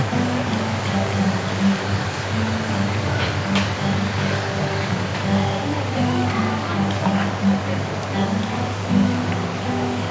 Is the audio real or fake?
fake